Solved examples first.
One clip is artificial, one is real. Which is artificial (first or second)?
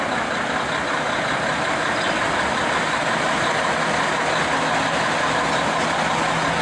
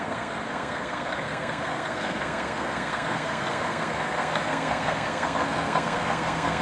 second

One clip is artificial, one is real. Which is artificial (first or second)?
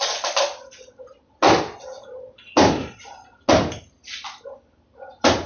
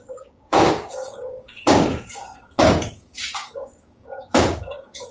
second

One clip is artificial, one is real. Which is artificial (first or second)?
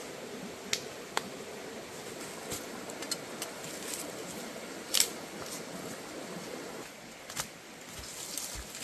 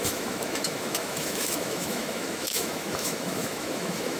second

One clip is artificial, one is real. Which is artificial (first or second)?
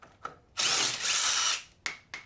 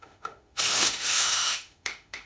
second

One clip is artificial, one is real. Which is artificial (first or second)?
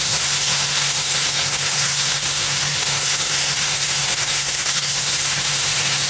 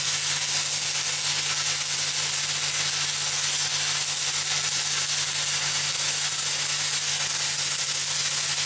first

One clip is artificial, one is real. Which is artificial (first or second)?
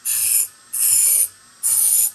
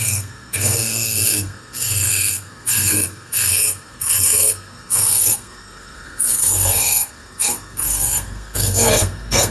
second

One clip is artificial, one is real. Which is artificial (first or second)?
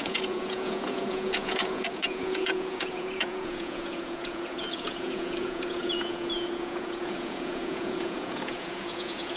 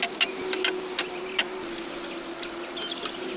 first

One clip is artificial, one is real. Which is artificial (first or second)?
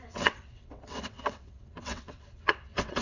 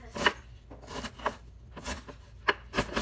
first